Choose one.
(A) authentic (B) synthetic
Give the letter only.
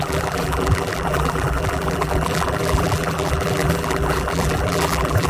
B